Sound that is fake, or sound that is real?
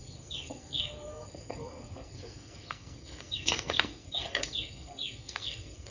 fake